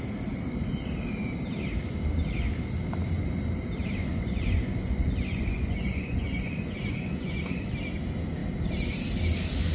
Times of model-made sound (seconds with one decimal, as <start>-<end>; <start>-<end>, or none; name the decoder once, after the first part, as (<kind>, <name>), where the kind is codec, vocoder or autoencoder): 4.0-7.7 (vocoder, Vocos)